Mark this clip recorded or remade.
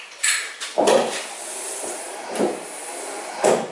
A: recorded